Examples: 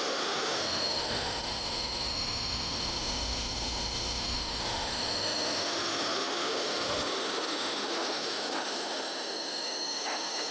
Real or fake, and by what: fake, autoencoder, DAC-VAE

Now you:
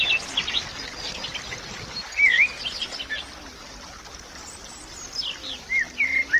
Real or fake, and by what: real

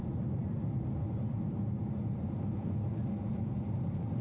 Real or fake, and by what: real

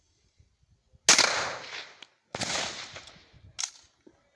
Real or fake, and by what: real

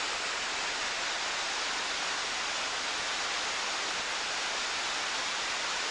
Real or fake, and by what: real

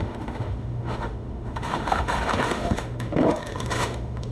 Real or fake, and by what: fake, autoencoder, DAC-VAE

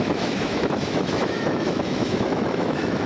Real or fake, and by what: fake, autoencoder, DAC-VAE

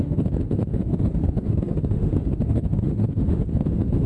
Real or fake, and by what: fake, autoencoder, DAC-VAE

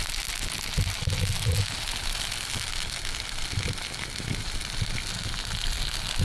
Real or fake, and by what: real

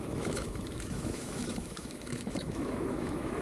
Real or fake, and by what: fake, autoencoder, DAC-VAE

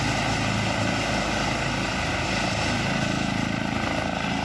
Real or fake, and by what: real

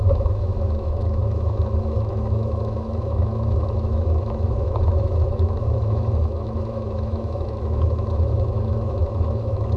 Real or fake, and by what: fake, autoencoder, DAC-VAE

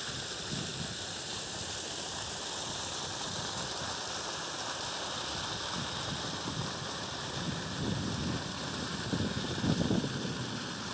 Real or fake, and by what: real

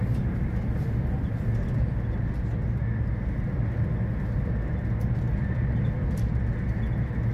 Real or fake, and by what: real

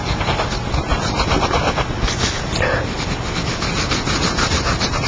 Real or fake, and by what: real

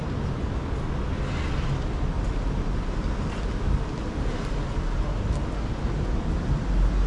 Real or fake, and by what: real